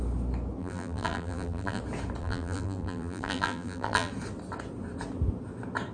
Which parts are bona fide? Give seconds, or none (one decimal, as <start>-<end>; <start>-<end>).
0.0-0.6; 1.8-2.2; 4.1-5.9